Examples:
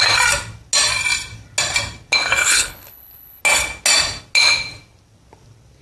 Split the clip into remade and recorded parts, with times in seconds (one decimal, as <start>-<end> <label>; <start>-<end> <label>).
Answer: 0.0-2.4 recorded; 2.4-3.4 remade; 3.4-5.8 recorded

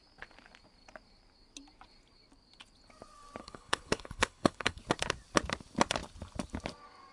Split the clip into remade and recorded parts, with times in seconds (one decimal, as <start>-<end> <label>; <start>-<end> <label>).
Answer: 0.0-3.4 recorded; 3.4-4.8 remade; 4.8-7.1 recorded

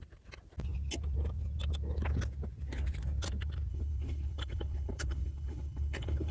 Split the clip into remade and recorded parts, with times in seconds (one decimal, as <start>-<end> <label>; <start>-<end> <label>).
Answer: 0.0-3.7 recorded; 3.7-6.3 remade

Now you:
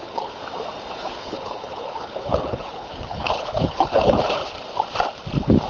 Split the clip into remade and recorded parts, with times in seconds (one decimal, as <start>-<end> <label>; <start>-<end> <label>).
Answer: 0.0-0.4 remade; 0.4-0.9 recorded; 0.9-4.4 remade; 4.4-5.7 recorded